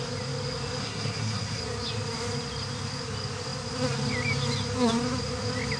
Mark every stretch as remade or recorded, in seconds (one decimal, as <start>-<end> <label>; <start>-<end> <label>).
0.0-0.8 recorded; 0.8-1.6 remade; 1.6-5.8 recorded